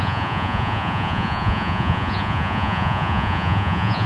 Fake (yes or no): yes